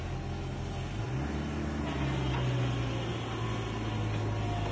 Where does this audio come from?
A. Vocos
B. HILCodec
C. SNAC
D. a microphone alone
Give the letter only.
D